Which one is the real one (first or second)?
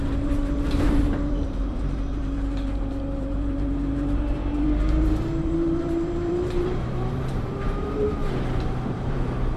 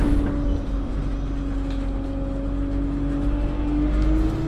second